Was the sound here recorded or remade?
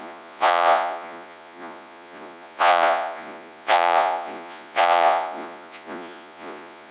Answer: remade